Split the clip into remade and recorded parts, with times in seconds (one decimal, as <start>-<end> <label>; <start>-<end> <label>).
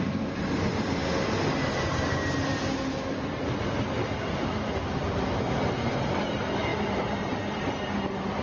0.0-8.4 recorded